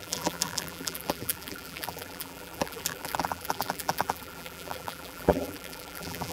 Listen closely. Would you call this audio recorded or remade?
remade